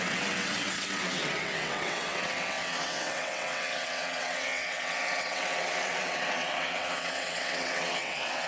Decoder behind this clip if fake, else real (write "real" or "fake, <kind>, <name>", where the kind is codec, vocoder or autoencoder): fake, vocoder, WaveNeXt